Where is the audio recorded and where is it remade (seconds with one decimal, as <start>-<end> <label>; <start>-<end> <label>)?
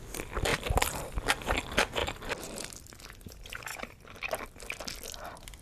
0.0-0.5 recorded; 0.5-1.1 remade; 1.1-5.6 recorded